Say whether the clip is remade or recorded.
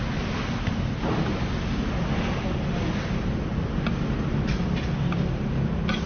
recorded